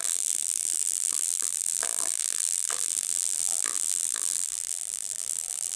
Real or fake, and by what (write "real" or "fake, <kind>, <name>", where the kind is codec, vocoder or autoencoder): fake, vocoder, BigVGAN v2